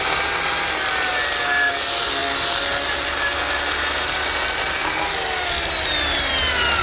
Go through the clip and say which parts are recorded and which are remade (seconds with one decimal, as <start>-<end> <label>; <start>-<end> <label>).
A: 0.0-6.8 recorded

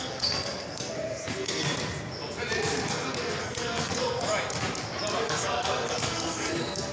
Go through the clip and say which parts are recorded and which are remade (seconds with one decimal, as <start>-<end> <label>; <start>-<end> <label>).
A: 0.0-1.6 remade; 1.6-2.9 recorded; 2.9-4.3 remade; 4.3-5.3 recorded; 5.3-6.9 remade

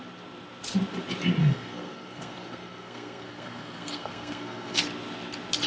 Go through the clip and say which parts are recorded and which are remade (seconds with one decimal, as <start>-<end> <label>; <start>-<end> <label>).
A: 0.0-1.4 recorded; 1.4-4.8 remade; 4.8-5.7 recorded

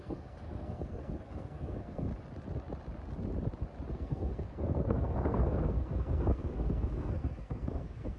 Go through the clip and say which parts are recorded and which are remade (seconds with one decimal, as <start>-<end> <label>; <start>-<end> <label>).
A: 0.0-2.1 remade; 2.1-3.9 recorded; 3.9-8.2 remade

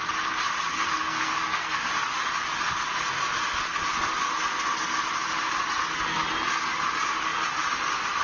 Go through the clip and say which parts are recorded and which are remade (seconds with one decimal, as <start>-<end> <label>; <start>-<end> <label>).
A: 0.0-0.7 recorded; 0.7-1.9 remade; 1.9-8.2 recorded

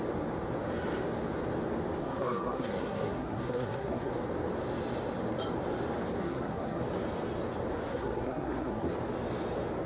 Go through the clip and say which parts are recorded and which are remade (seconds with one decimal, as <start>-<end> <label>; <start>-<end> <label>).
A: 0.0-2.0 recorded; 2.0-4.1 remade; 4.1-6.2 recorded; 6.2-6.8 remade; 6.8-7.9 recorded; 7.9-8.9 remade; 8.9-9.9 recorded